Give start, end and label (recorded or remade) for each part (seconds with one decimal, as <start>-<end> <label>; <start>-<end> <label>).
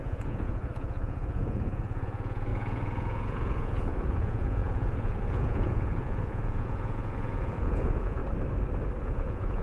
0.0-8.2 remade; 8.2-9.0 recorded; 9.0-9.6 remade